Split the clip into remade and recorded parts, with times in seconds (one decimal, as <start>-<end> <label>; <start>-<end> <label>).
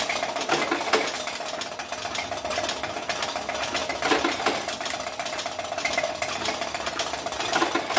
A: 0.0-8.0 recorded